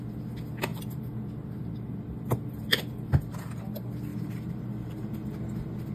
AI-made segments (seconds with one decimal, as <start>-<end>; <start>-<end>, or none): 0.7-3.6; 4.1-5.3